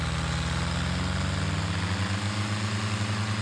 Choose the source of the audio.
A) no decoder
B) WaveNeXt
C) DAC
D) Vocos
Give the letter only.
A